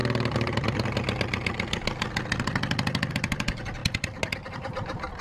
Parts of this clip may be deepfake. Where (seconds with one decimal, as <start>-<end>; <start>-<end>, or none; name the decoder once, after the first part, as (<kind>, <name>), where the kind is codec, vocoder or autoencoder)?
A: 3.1-3.8 (vocoder, BigVGAN v2); 4.5-5.2